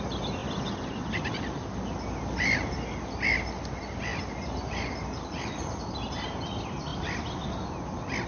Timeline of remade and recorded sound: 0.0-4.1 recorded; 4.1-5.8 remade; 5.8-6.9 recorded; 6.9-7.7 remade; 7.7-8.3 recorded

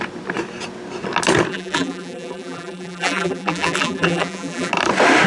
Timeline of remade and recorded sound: 0.0-1.5 recorded; 1.5-4.7 remade; 4.7-5.3 recorded

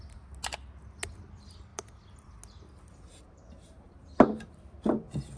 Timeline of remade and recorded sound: 0.0-5.4 recorded

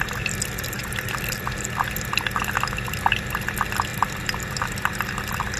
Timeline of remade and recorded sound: 0.0-0.8 recorded; 0.8-1.4 remade; 1.4-3.9 recorded; 3.9-5.6 remade

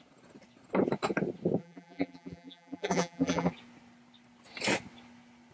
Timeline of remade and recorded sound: 0.0-1.6 recorded; 1.6-3.5 remade; 3.5-5.5 recorded